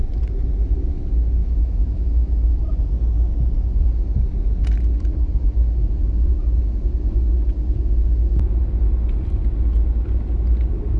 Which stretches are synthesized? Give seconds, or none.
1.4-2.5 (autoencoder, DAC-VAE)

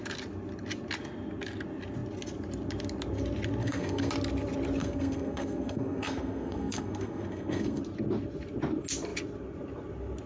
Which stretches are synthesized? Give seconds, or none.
3.6-4.1 (codec, SNAC); 4.8-7.8

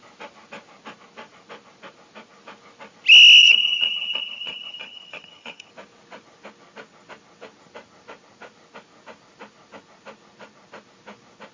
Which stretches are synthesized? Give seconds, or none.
3.4-5.7 (vocoder, HiFi-GAN)

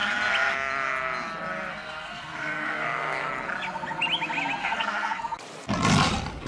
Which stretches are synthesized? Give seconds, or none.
1.7-3.3 (codec, SNAC); 4.6-5.2

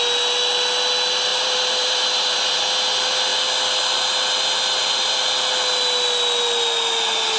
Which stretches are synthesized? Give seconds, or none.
1.3-2.6 (vocoder, BigVGAN v2)